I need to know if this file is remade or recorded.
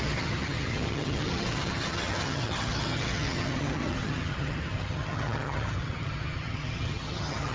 remade